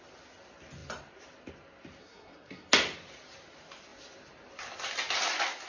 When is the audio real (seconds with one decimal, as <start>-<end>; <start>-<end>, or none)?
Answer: 0.0-2.0; 2.7-5.7